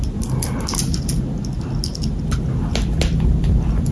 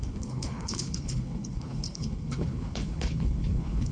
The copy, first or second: second